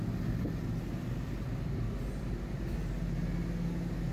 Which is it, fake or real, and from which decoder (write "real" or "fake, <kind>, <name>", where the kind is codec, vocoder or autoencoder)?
real